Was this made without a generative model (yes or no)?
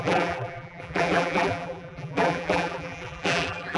no